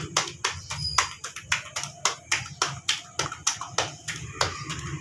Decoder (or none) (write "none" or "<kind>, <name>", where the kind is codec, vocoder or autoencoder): none